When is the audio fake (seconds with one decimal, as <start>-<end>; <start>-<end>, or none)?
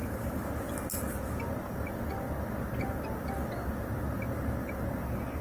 0.0-0.5